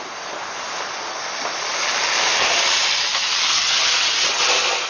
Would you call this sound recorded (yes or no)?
yes